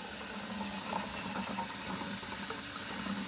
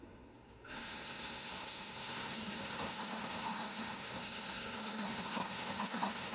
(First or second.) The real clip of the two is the first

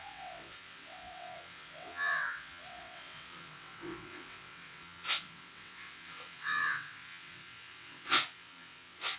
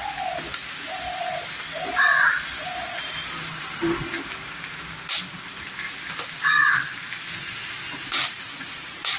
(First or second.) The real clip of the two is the second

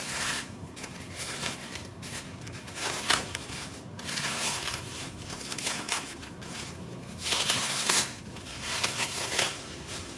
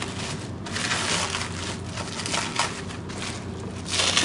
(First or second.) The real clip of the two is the second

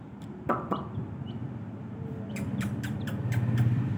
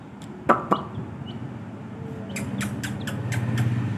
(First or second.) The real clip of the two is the second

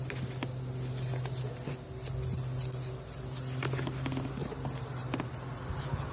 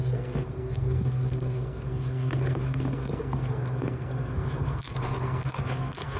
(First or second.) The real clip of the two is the first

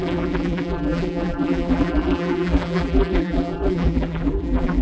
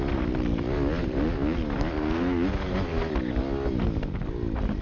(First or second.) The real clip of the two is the second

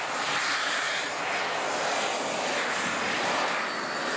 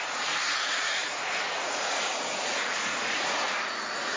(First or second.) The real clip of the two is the first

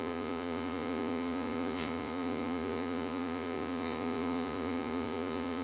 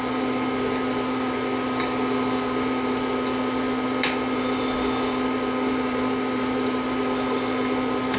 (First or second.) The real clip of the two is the second